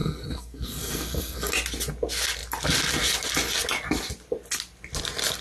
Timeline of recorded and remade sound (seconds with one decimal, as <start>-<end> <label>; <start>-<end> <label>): 0.0-1.5 remade; 1.5-5.4 recorded